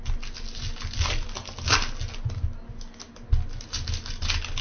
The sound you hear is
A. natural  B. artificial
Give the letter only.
A